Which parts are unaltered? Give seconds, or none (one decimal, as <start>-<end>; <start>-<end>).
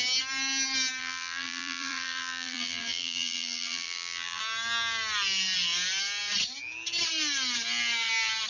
0.0-1.0; 4.4-8.5